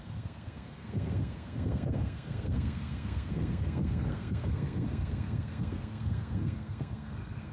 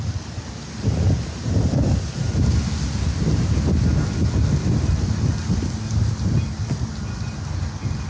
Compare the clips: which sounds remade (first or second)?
first